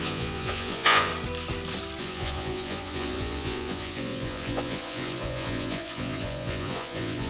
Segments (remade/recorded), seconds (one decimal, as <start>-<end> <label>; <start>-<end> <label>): 0.0-1.1 remade; 1.1-2.0 recorded; 2.0-7.3 remade